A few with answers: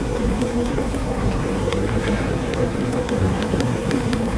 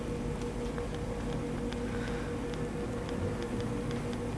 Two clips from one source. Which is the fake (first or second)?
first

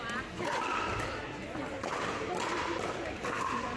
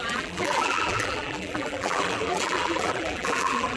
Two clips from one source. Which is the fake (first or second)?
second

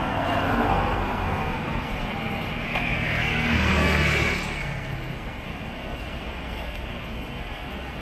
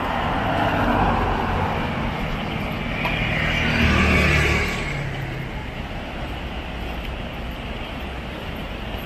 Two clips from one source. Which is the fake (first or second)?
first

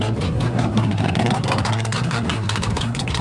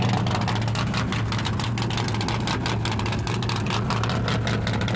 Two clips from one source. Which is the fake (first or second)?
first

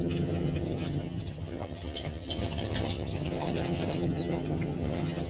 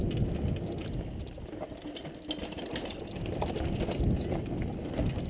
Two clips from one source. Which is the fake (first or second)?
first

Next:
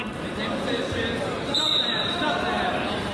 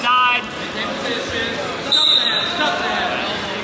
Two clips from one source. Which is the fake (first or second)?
first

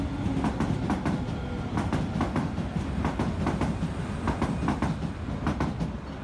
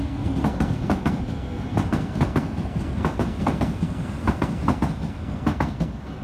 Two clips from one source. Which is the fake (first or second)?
second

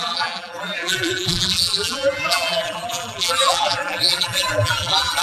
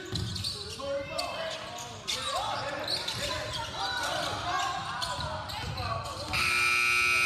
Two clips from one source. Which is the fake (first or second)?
first